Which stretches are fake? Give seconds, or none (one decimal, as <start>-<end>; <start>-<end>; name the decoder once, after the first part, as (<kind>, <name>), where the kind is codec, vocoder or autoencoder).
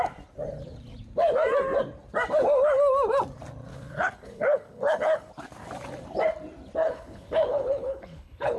3.7-5.3 (codec, HILCodec); 6.8-8.6